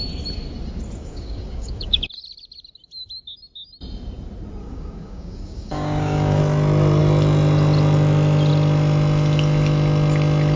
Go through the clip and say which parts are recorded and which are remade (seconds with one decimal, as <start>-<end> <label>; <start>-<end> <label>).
0.0-1.0 recorded; 1.0-2.0 remade; 2.0-4.6 recorded; 4.6-6.4 remade; 6.4-10.6 recorded